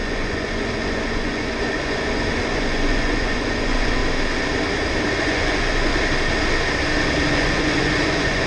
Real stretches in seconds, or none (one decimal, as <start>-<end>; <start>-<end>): 4.0-5.2; 5.9-7.3